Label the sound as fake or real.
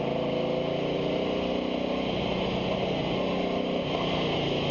real